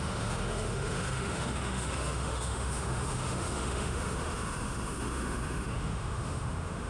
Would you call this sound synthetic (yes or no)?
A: yes